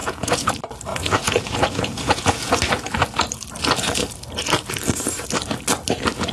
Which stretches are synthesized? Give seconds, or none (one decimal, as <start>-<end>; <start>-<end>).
0.0-0.5; 0.9-2.5